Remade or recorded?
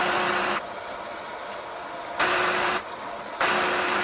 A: recorded